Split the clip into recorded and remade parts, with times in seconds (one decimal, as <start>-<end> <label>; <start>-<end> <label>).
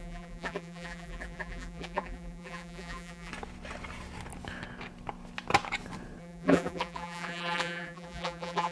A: 0.0-3.3 remade; 3.3-6.2 recorded; 6.2-8.7 remade